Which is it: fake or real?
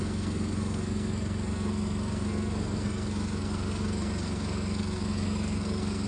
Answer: fake